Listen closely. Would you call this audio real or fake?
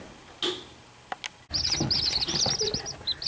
real